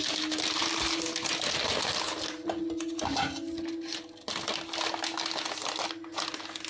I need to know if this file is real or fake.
real